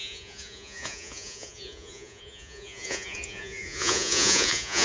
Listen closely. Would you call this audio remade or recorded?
remade